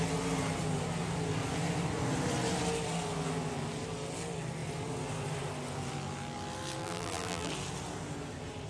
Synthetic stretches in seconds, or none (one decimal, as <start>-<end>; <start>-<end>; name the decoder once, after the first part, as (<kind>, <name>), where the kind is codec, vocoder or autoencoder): 6.8-7.5 (vocoder, BigVGAN v2)